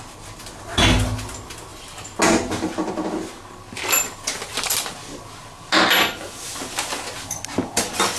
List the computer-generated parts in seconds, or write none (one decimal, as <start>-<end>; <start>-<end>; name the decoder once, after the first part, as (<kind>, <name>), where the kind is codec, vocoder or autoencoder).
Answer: none